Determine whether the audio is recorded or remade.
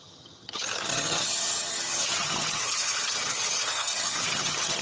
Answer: remade